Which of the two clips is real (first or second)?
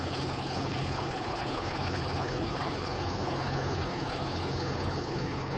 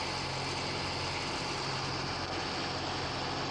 second